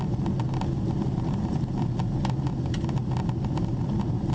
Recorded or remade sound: recorded